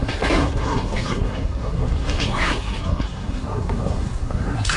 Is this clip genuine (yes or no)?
no